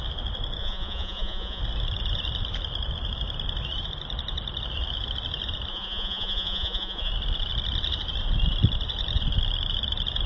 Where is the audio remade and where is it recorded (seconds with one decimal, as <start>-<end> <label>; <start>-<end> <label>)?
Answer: 0.0-0.6 recorded; 0.6-1.6 remade; 1.6-5.7 recorded; 5.7-7.1 remade; 7.1-10.3 recorded